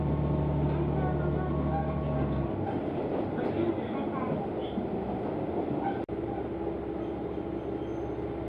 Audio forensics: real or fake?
real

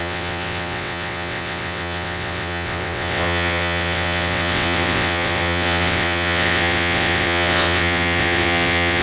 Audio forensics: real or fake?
fake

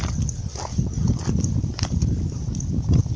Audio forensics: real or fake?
real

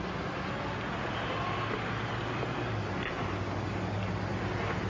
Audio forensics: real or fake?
real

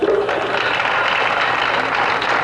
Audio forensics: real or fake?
real